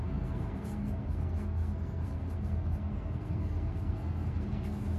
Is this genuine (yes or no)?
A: no